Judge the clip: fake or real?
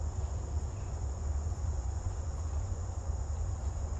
fake